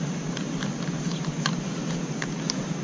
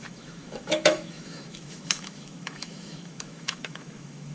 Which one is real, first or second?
first